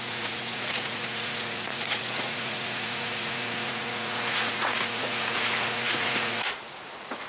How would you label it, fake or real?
fake